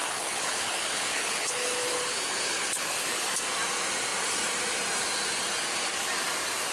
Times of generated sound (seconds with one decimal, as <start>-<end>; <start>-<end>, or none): 0.0-3.3